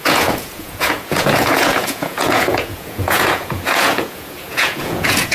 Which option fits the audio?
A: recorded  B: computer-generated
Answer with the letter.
B